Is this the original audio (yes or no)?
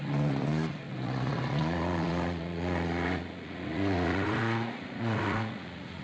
no